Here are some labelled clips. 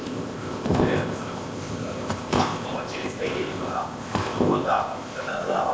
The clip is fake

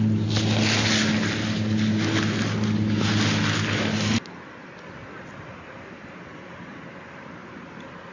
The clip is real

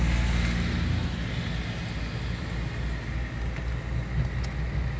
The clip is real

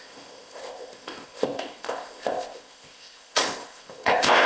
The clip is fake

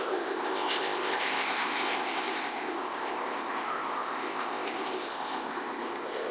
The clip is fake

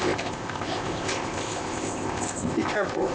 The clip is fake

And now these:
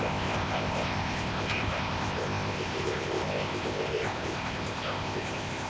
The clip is fake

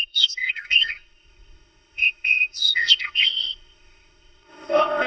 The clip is fake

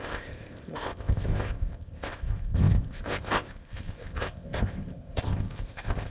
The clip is fake